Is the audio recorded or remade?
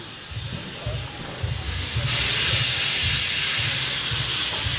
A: recorded